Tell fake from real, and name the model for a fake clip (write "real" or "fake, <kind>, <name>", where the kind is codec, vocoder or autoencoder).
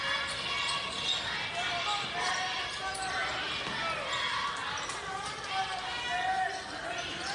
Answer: real